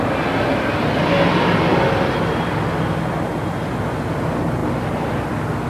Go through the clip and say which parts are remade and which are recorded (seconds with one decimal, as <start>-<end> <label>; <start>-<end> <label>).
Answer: 0.0-4.6 recorded; 4.6-5.7 remade